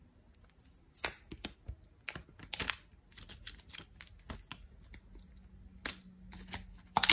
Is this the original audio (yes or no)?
yes